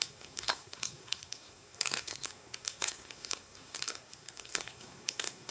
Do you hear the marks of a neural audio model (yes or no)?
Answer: yes